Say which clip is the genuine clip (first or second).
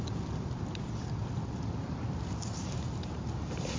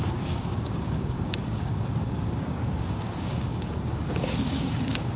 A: first